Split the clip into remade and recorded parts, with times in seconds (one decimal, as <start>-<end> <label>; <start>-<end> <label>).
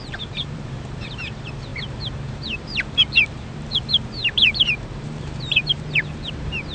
0.0-6.7 remade